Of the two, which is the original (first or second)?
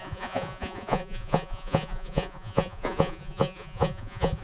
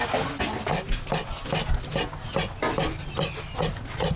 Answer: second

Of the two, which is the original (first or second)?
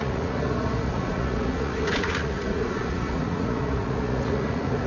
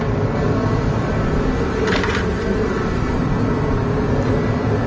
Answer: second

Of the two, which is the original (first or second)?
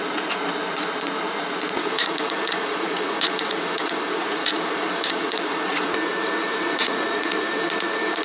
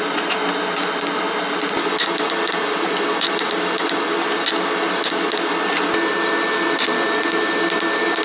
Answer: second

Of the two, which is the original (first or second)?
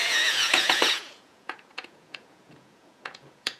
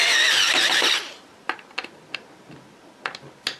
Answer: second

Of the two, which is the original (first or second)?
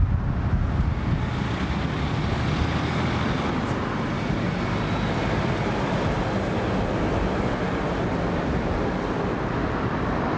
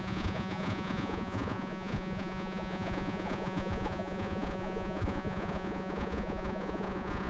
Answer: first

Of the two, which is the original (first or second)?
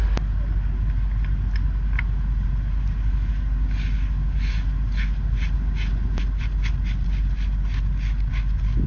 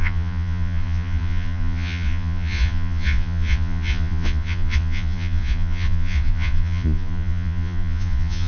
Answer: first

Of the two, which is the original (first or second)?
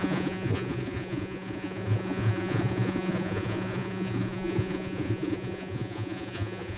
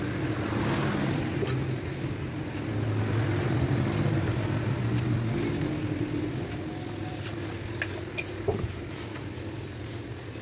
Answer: second